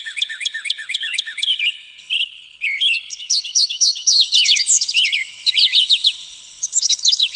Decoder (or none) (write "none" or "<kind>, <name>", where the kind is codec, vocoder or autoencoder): codec, HILCodec